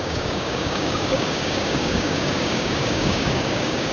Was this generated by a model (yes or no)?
yes